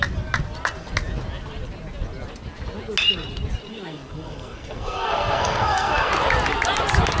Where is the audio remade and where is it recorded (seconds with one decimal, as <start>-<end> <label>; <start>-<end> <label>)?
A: 0.0-3.7 recorded; 3.7-6.1 remade; 6.1-7.2 recorded